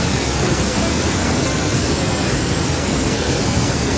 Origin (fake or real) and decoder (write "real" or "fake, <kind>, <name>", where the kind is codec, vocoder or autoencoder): fake, codec, SNAC